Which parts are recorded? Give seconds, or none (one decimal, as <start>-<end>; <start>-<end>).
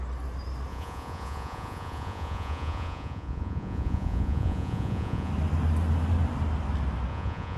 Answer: 0.0-0.7; 5.3-7.1